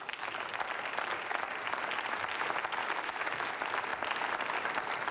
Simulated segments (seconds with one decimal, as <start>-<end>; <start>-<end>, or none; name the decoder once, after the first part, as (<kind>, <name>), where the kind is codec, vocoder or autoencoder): 2.8-3.5 (autoencoder, DAC-VAE)